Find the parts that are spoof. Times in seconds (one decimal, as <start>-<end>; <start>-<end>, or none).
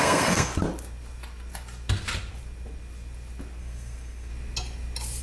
0.0-0.5; 3.6-4.3